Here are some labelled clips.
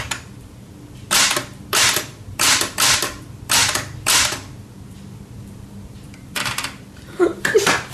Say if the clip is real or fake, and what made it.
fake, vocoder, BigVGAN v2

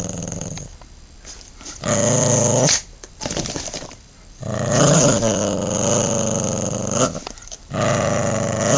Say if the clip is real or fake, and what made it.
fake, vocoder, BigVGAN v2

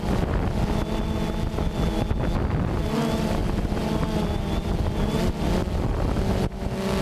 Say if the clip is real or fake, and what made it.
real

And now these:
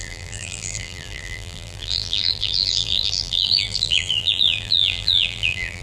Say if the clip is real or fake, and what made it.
fake, vocoder, BigVGAN v2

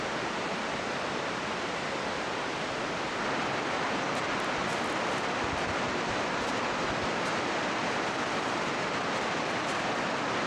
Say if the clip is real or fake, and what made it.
real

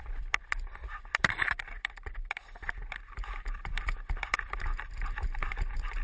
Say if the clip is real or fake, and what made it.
fake, vocoder, BigVGAN v2